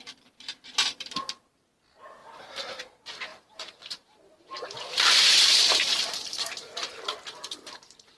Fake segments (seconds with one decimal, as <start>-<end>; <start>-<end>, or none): 2.2-2.8; 3.3-8.2